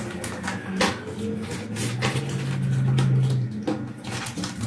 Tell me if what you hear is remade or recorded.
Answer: recorded